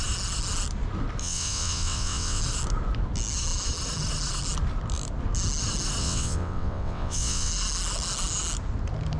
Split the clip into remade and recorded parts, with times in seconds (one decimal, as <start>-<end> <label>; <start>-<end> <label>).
0.0-1.2 recorded; 1.2-2.4 remade; 2.4-6.0 recorded; 6.0-7.5 remade; 7.5-9.2 recorded